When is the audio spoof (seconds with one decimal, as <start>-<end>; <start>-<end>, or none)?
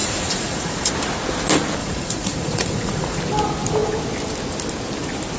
0.0-0.9; 1.8-3.2